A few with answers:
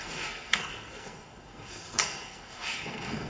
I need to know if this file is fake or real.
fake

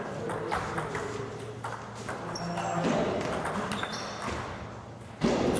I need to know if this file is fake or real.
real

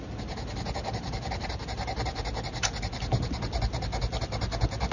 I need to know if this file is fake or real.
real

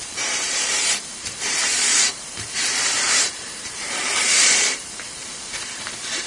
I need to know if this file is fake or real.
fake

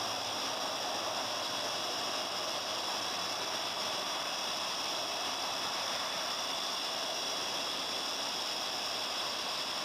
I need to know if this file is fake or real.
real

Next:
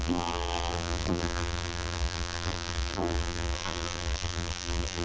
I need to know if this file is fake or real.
fake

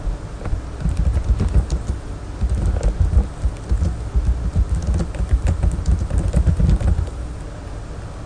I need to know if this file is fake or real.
real